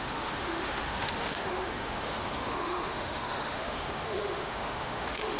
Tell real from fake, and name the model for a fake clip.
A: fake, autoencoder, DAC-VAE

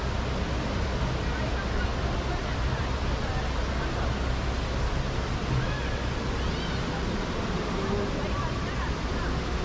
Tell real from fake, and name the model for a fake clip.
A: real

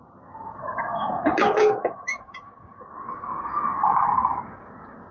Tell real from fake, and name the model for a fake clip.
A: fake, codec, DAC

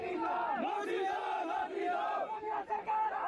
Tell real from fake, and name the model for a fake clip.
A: fake, vocoder, BigVGAN v2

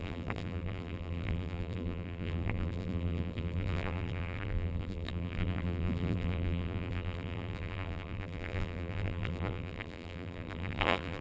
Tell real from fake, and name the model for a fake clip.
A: fake, vocoder, BigVGAN v2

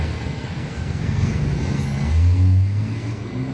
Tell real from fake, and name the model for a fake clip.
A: fake, codec, SNAC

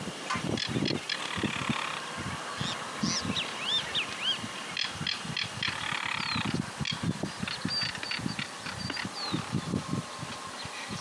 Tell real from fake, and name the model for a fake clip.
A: real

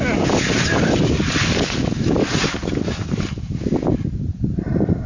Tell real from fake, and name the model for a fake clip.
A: real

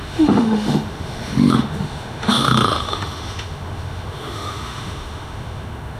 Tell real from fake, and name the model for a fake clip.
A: fake, autoencoder, DAC-VAE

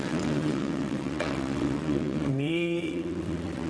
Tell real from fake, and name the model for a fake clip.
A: fake, vocoder, WaveNeXt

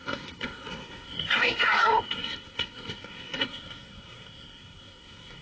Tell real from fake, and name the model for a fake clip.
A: fake, codec, SNAC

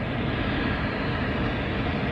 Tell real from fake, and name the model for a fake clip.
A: real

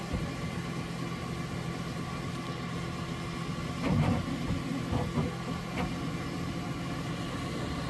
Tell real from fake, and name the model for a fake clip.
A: real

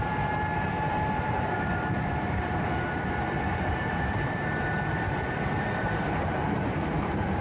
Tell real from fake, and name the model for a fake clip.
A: fake, vocoder, BigVGAN v2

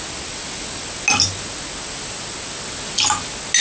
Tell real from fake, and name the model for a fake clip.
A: real